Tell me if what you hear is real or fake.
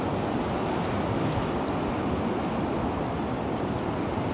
real